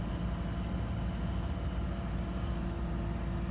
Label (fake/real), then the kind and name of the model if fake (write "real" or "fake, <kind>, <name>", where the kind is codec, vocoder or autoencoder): real